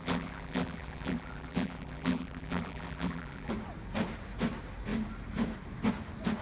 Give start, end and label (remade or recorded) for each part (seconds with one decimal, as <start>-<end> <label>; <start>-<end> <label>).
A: 0.0-3.5 remade; 3.5-6.4 recorded